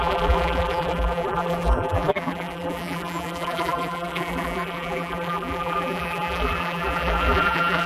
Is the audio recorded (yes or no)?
no